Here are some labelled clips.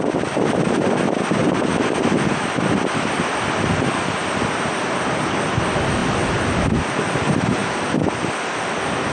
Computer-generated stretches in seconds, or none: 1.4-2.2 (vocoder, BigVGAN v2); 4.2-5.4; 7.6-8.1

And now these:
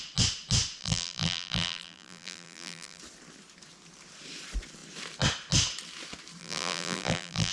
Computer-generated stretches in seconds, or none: 0.8-3.0 (vocoder, BigVGAN v2); 6.4-7.5

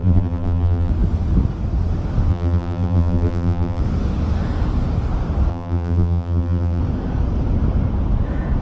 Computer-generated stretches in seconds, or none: 0.0-0.9 (vocoder, BigVGAN v2); 2.3-3.8; 5.5-6.8

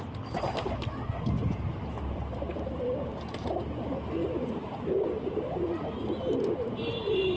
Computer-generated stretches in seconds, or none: 1.4-3.5 (vocoder, BigVGAN v2); 4.2-5.6

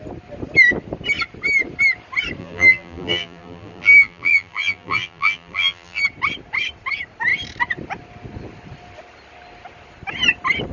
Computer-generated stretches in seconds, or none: 2.4-6.0 (vocoder, BigVGAN v2)

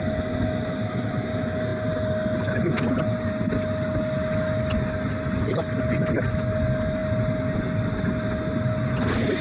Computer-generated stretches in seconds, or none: none

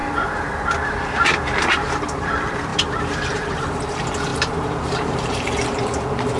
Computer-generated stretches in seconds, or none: 1.7-6.4 (vocoder, BigVGAN v2)